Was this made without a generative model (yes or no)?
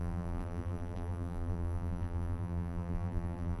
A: no